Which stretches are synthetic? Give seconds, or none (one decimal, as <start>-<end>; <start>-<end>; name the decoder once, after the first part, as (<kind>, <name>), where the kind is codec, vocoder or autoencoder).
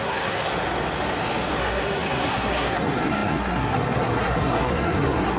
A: 0.0-0.5 (codec, SNAC); 1.6-5.4